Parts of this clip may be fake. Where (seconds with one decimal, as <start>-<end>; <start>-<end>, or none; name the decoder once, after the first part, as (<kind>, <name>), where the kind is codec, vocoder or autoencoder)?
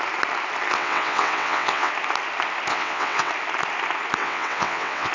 0.7-1.9 (vocoder, WaveNeXt); 2.7-3.3; 4.2-5.1